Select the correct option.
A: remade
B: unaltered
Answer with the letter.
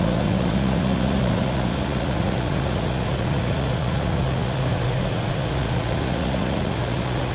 A